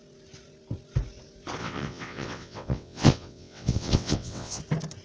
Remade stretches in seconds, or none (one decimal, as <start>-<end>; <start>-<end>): 1.6-4.6